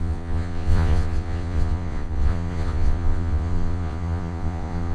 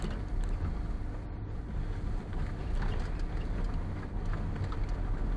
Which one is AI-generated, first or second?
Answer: first